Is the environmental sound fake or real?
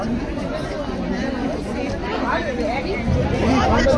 real